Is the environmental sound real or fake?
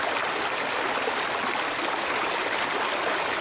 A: real